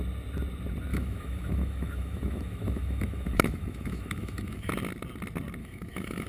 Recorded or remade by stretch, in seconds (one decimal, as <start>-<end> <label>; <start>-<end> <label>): 0.0-0.9 recorded; 0.9-4.7 remade; 4.7-5.6 recorded; 5.6-6.3 remade

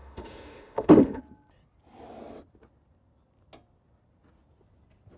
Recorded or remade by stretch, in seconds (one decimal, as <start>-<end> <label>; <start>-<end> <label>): 0.0-1.2 remade; 1.2-5.2 recorded

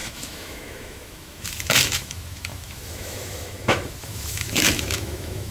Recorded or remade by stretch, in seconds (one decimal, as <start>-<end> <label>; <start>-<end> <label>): 0.0-5.5 remade

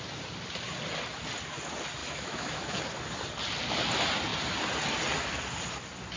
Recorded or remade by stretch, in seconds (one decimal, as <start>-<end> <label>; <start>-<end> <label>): 0.0-2.0 recorded; 2.0-2.8 remade; 2.8-6.2 recorded

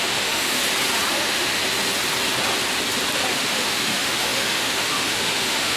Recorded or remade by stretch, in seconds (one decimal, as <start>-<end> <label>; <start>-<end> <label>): 0.0-0.6 remade; 0.6-1.1 recorded; 1.1-1.6 remade; 1.6-3.3 recorded; 3.3-5.8 remade

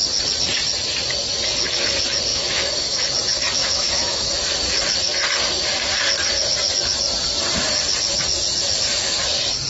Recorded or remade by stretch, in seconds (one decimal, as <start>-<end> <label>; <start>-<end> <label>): 0.0-2.3 recorded; 2.3-3.0 remade; 3.0-3.6 recorded; 3.6-4.3 remade; 4.3-9.7 recorded

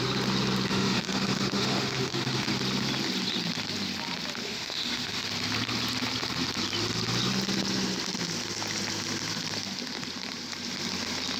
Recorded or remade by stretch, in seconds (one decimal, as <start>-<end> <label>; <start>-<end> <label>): 0.0-0.7 recorded; 0.7-2.5 remade; 2.5-4.4 recorded; 4.4-5.2 remade; 5.2-11.4 recorded

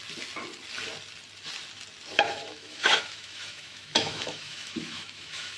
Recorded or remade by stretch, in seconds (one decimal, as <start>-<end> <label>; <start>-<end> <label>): 0.0-2.1 recorded; 2.1-5.6 remade